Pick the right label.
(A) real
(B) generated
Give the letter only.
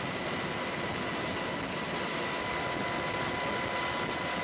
A